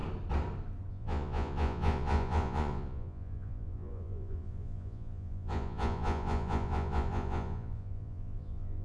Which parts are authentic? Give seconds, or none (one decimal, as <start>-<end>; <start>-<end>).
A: 0.0-0.9